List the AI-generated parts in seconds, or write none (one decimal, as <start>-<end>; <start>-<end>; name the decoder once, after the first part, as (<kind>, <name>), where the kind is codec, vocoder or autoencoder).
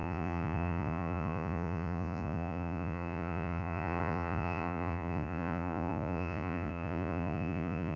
0.0-8.0 (vocoder, Vocos)